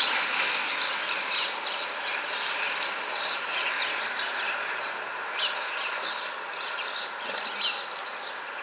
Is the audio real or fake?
real